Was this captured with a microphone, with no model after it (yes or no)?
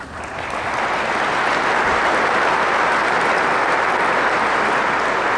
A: yes